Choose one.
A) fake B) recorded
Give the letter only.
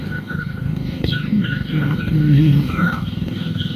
A